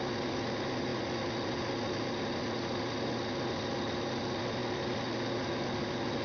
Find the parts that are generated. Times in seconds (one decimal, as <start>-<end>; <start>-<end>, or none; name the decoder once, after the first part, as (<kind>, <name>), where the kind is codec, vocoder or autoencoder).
none

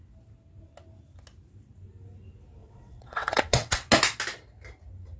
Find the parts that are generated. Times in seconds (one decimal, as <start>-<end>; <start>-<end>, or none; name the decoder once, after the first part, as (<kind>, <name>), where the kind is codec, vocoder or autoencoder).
2.6-3.9 (vocoder, WaveNeXt)

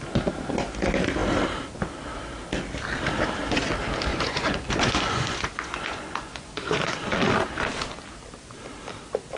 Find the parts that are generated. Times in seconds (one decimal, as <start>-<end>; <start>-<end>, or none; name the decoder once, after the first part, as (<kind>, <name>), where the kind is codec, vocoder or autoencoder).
4.1-7.2 (vocoder, Vocos)

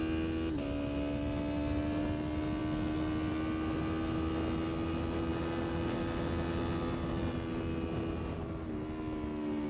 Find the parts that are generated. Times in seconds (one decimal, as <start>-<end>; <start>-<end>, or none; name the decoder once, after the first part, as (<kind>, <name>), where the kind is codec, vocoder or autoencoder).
none

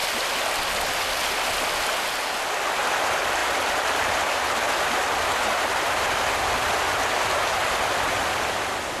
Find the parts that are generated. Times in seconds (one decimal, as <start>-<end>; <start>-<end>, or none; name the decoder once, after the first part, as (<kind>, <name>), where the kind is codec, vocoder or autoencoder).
none

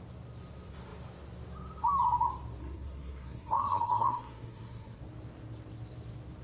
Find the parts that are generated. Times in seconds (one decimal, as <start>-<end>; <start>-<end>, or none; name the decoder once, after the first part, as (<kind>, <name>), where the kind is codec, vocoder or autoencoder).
2.6-5.0 (codec, SNAC)